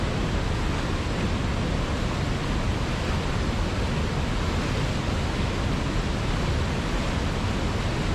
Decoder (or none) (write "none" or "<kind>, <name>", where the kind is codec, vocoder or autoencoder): none